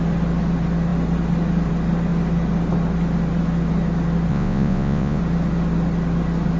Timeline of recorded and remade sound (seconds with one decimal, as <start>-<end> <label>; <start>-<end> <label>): 0.0-4.3 recorded; 4.3-5.2 remade; 5.2-6.6 recorded